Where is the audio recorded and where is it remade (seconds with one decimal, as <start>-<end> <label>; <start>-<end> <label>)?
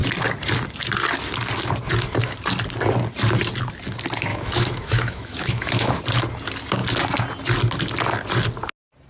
0.0-4.3 recorded; 4.3-6.0 remade; 6.0-9.1 recorded